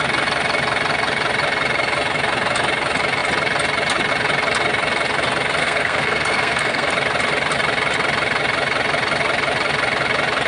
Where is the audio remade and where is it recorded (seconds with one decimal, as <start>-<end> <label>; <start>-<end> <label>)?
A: 0.0-5.6 recorded; 5.6-6.9 remade; 6.9-10.5 recorded